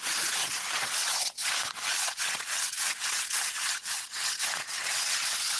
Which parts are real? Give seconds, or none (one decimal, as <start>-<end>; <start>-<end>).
none